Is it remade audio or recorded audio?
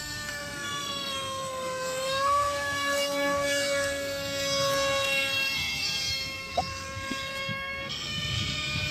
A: remade